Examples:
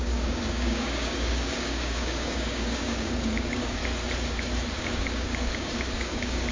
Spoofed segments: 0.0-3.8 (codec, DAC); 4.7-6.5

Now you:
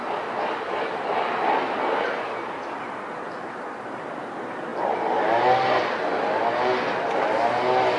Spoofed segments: none

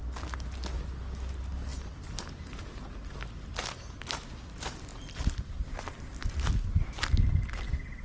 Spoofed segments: 4.9-5.8 (vocoder, BigVGAN v2)

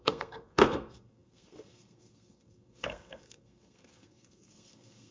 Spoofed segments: 0.0-5.1 (codec, SNAC)